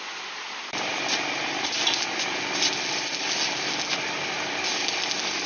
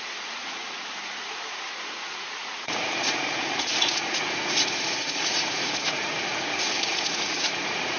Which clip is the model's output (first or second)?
second